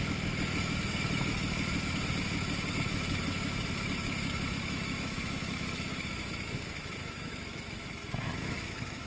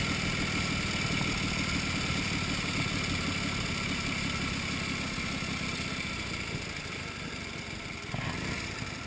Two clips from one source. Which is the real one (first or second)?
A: second